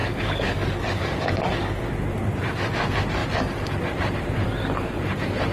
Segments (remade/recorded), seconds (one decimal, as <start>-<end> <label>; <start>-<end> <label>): 0.0-1.9 remade; 1.9-5.5 recorded